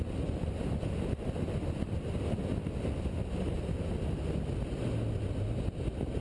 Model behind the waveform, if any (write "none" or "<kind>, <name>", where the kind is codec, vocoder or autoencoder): none